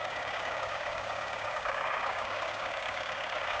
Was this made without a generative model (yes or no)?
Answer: no